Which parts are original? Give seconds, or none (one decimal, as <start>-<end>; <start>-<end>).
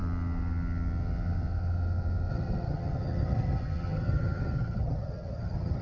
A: 0.0-2.3